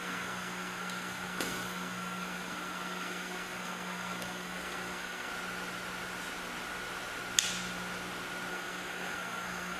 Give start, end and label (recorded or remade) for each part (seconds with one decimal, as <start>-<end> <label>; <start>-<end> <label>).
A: 0.0-5.3 remade; 5.3-8.5 recorded; 8.5-9.8 remade